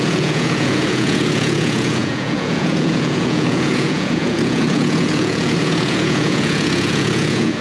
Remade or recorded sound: remade